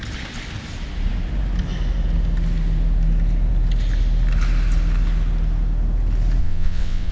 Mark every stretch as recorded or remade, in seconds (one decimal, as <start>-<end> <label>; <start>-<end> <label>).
0.0-6.4 recorded; 6.4-7.1 remade